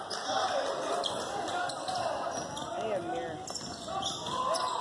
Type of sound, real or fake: real